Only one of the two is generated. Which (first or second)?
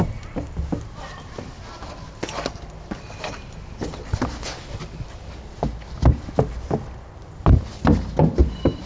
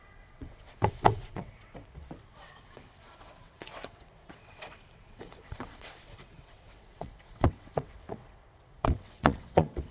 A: second